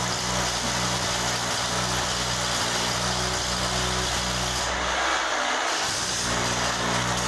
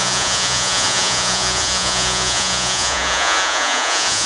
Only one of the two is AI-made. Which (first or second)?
second